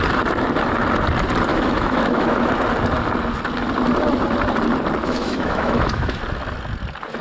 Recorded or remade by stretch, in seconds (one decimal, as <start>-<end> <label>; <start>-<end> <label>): 0.0-1.5 recorded; 1.5-2.5 remade; 2.5-5.0 recorded; 5.0-6.2 remade; 6.2-7.2 recorded